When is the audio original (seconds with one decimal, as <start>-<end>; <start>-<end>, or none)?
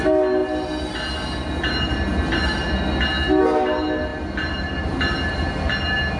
0.0-6.2